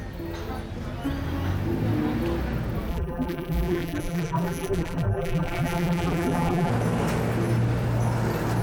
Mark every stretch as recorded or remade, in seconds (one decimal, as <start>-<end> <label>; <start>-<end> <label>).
0.0-2.9 recorded; 2.9-6.7 remade; 6.7-8.6 recorded